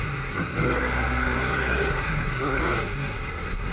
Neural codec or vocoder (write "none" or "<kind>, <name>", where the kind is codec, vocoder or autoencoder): codec, SNAC